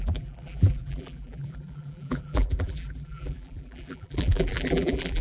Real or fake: fake